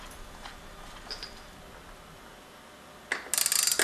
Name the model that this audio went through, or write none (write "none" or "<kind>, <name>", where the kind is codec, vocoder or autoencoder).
none